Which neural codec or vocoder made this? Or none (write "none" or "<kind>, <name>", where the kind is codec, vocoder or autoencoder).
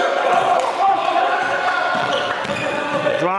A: vocoder, WaveNeXt